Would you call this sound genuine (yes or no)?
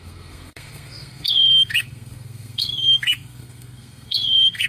no